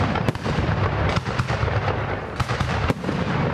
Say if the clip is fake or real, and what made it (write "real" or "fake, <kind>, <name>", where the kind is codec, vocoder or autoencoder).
real